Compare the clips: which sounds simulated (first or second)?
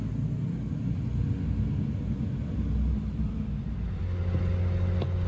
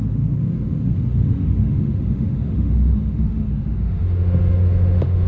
second